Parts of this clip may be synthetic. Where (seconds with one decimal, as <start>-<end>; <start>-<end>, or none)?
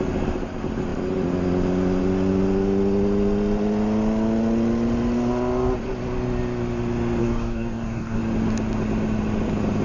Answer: 7.2-8.2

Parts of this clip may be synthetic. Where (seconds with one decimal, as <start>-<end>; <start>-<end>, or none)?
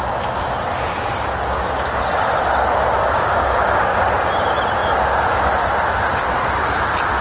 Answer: 3.0-4.0; 4.8-5.5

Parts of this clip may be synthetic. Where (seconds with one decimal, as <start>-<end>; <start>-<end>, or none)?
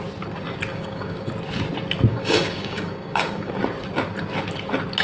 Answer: 0.7-1.3; 2.1-3.5